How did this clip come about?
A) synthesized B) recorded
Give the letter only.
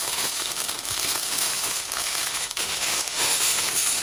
A